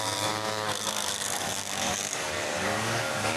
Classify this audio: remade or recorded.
remade